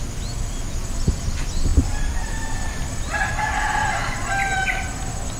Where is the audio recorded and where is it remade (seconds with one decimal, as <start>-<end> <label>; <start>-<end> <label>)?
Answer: 0.0-1.7 recorded; 1.7-4.9 remade; 4.9-5.4 recorded